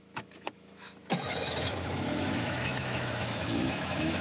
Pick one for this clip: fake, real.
fake